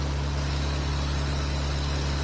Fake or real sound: real